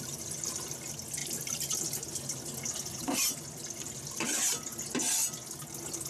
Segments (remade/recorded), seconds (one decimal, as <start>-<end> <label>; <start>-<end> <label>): 0.0-6.1 recorded